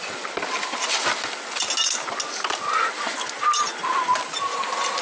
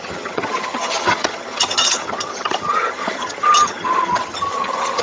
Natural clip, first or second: first